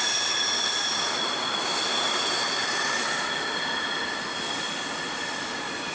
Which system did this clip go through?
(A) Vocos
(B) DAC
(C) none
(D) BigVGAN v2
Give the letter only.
C